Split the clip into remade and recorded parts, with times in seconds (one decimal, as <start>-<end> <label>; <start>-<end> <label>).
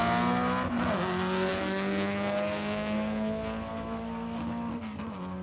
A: 0.0-1.5 recorded; 1.5-4.7 remade; 4.7-5.4 recorded